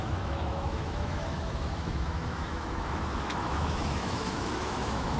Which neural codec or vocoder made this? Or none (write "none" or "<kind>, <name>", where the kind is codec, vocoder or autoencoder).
autoencoder, DAC-VAE